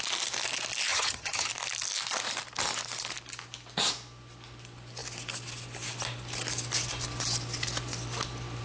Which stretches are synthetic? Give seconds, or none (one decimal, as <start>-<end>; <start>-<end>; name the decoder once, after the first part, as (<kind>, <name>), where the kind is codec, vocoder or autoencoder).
0.9-1.5 (vocoder, HiFi-GAN)